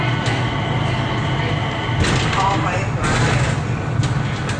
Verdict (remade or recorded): recorded